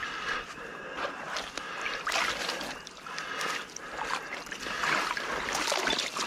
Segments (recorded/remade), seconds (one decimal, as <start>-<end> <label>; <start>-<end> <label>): 0.0-6.3 recorded